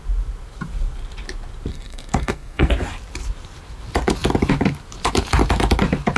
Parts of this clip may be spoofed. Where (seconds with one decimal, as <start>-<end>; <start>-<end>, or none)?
1.7-2.7

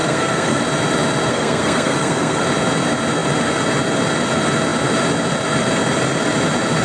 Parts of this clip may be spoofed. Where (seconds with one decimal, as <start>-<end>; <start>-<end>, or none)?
0.0-0.6; 1.3-2.4

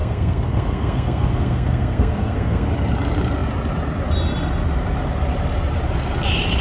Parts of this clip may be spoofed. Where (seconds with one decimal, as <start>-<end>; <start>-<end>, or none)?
0.0-2.7

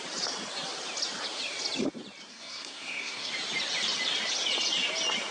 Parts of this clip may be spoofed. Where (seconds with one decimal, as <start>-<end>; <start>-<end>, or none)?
2.3-3.3

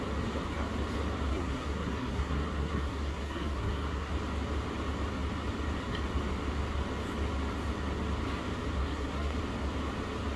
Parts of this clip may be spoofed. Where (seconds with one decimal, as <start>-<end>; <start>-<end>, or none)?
1.3-4.1; 8.8-9.4

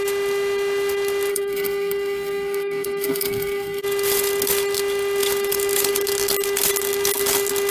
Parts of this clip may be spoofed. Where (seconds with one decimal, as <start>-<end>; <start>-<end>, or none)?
1.3-3.8